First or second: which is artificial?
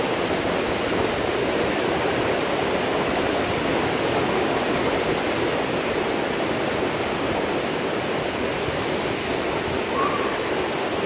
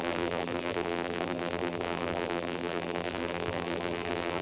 second